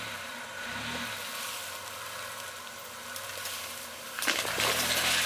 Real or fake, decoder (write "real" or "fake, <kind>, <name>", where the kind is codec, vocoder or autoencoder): real